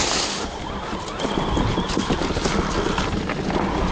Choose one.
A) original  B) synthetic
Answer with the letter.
A